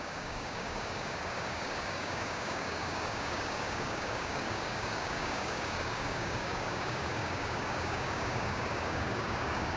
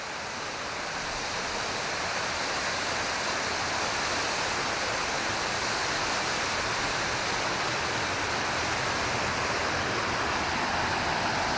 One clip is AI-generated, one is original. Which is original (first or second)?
second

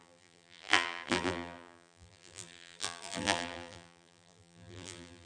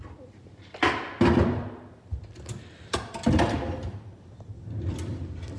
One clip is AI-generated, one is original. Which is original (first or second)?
second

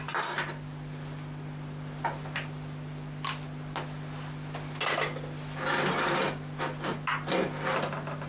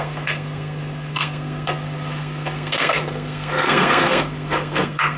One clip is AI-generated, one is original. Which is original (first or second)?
first